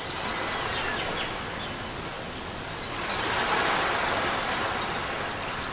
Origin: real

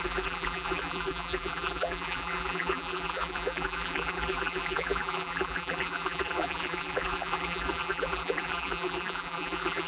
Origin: fake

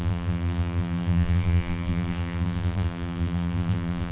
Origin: fake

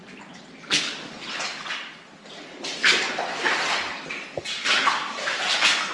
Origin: real